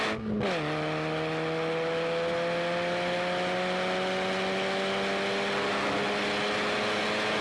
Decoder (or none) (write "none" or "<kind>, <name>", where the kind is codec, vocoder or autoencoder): none